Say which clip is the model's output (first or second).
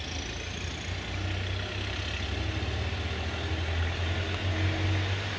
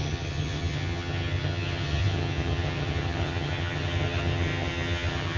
second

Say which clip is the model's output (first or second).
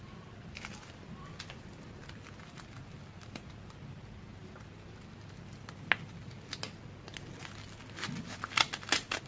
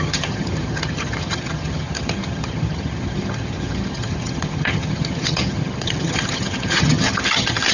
second